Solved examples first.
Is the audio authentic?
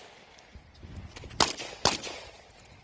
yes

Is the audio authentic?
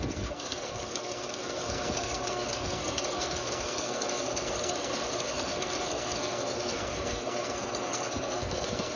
no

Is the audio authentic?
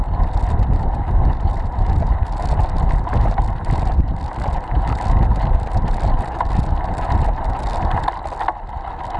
yes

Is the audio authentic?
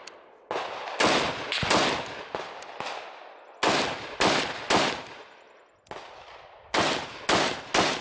yes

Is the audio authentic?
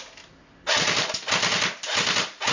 yes